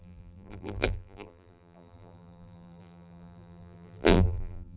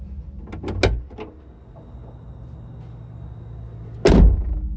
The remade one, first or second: first